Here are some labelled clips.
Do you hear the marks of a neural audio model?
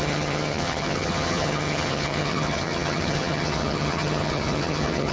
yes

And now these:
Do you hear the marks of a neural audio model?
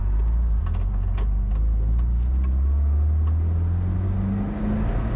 no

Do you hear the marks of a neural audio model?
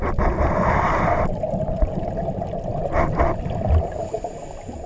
no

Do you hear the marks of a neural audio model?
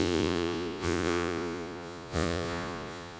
yes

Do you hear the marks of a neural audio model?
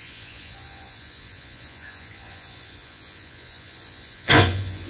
yes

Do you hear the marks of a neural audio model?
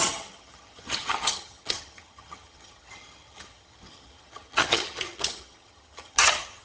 yes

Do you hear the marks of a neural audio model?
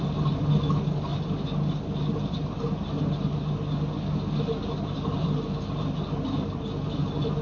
no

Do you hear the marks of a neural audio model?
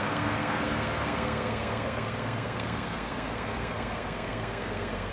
yes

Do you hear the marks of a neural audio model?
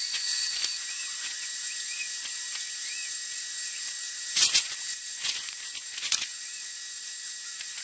yes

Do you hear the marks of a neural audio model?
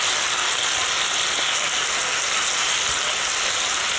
no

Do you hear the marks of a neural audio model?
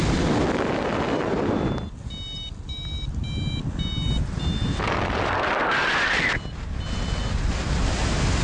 no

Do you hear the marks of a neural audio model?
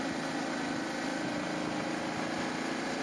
no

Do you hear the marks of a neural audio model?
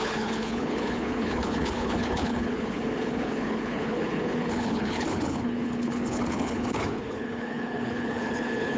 yes